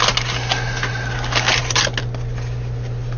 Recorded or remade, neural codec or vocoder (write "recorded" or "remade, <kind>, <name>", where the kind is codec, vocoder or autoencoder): recorded